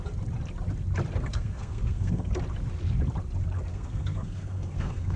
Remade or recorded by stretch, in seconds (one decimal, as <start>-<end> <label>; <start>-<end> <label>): 0.0-1.3 recorded; 1.3-2.3 remade; 2.3-3.7 recorded; 3.7-5.2 remade